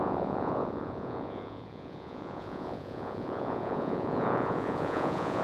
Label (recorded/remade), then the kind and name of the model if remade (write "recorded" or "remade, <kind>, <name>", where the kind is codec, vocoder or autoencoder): remade, vocoder, Vocos